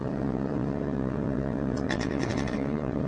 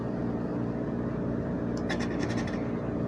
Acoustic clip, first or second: second